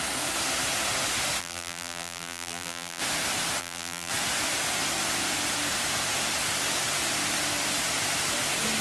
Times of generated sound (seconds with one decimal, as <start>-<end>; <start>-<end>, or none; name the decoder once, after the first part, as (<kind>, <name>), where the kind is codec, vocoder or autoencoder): 1.4-3.0 (vocoder, BigVGAN v2); 3.6-4.1